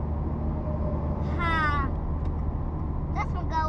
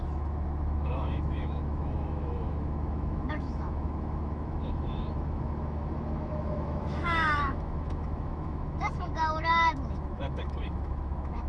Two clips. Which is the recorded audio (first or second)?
first